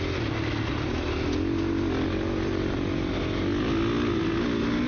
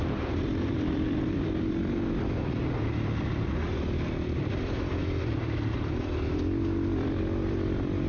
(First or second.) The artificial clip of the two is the second